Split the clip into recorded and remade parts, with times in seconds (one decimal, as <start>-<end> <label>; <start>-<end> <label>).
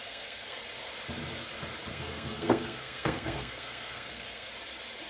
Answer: 0.0-0.6 remade; 0.6-1.9 recorded; 1.9-4.5 remade; 4.5-5.1 recorded